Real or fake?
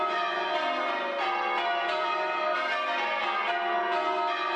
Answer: real